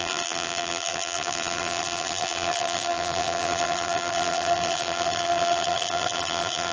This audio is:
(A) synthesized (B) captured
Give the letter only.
A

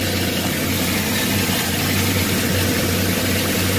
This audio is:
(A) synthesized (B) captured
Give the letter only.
B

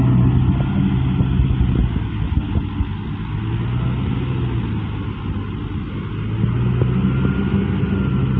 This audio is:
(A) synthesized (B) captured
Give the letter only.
B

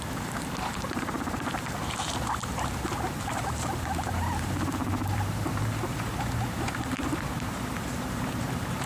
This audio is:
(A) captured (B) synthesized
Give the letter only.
B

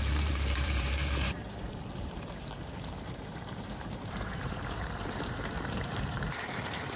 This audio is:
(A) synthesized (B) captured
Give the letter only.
A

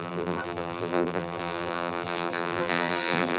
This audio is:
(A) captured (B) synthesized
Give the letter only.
B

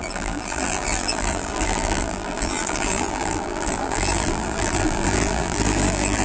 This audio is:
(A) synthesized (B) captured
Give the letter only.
A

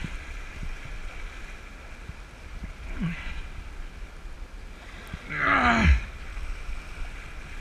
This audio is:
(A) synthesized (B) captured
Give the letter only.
B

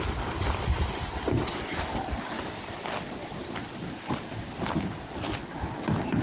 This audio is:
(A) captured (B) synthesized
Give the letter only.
B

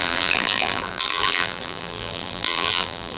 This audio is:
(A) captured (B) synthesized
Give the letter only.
B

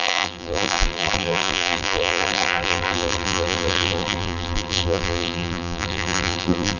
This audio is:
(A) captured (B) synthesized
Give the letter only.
B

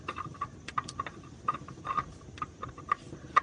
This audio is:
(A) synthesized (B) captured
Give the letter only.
A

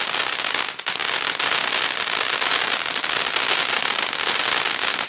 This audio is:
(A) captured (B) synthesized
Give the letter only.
A